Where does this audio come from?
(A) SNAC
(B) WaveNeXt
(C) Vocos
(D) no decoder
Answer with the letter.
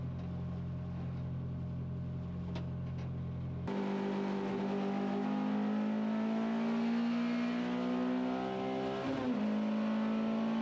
D